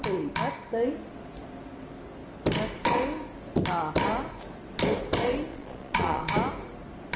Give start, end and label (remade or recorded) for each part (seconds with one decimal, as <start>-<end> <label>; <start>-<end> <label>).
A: 0.0-5.5 recorded; 5.5-6.3 remade; 6.3-7.2 recorded